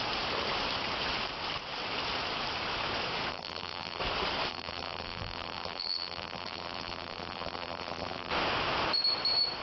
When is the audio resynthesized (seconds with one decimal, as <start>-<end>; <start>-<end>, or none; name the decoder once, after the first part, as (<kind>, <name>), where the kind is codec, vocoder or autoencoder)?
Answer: 3.3-4.0 (vocoder, BigVGAN v2); 4.5-8.3